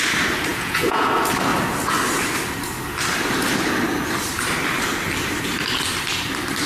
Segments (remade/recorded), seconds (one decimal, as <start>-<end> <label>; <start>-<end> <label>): 0.0-0.5 recorded; 0.5-1.1 remade; 1.1-6.7 recorded